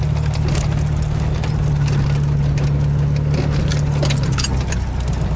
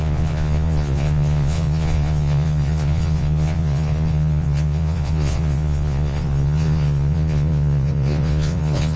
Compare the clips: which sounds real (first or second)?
first